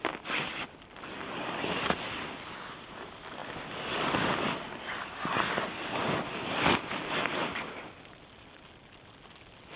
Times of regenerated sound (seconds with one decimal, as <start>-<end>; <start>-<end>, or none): none

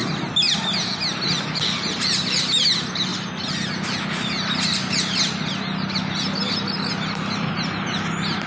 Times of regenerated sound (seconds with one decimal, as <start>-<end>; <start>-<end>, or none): none

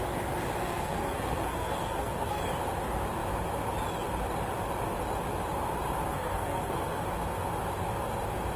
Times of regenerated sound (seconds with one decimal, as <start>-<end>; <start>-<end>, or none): 0.6-2.4; 6.1-7.0

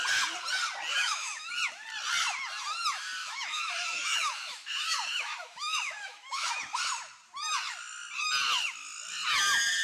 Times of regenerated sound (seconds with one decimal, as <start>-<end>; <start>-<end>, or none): 0.9-1.5; 3.2-6.5

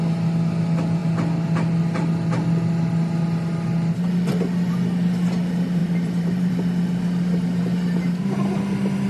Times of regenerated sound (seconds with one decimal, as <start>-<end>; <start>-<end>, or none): 5.8-6.5

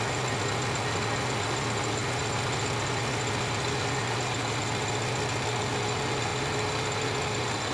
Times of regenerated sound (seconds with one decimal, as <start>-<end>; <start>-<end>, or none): none

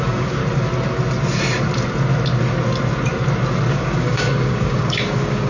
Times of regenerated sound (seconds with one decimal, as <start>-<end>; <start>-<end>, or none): 0.0-0.4; 3.7-5.5

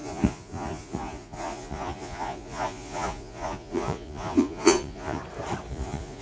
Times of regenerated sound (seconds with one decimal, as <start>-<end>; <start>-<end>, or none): 0.0-5.2; 5.7-6.2